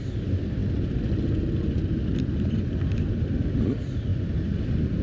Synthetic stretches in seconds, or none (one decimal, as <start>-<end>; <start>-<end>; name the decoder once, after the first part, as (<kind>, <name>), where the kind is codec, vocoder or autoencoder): none